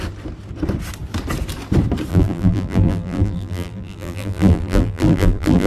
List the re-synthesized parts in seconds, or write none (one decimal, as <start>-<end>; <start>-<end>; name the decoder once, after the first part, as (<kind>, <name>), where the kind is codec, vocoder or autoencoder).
2.1-5.7 (vocoder, BigVGAN v2)